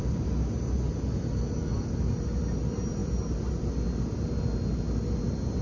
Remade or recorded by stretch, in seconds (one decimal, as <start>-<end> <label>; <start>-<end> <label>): 0.0-5.6 recorded